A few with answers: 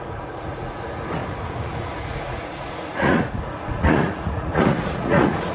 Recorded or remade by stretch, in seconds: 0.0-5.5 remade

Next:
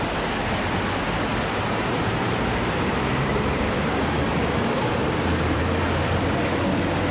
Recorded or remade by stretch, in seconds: 0.0-1.3 recorded; 1.3-5.6 remade; 5.6-7.1 recorded

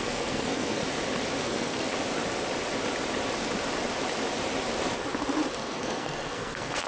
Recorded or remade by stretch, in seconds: 0.0-0.8 remade; 0.8-1.4 recorded; 1.4-1.9 remade; 1.9-5.5 recorded; 5.5-6.9 remade

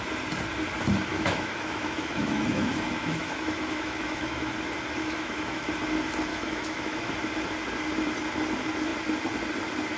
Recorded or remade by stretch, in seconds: 0.0-1.1 recorded; 1.1-4.5 remade; 4.5-5.0 recorded; 5.0-5.7 remade; 5.7-6.3 recorded; 6.3-7.1 remade; 7.1-10.0 recorded